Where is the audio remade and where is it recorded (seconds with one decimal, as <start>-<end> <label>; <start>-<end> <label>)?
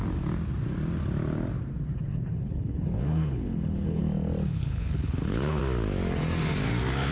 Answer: 0.0-2.1 recorded; 2.1-4.0 remade; 4.0-4.5 recorded; 4.5-5.6 remade; 5.6-7.1 recorded